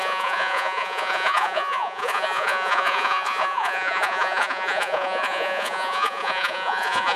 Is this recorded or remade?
remade